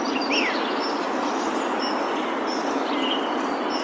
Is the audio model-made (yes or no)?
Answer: no